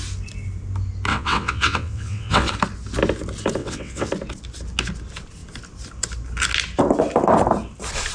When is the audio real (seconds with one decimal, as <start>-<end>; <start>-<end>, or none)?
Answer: 0.0-1.1; 2.5-3.6; 4.1-8.1